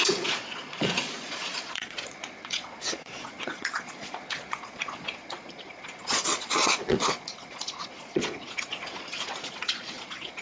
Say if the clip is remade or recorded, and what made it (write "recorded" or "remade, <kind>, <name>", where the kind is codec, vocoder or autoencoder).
remade, vocoder, Vocos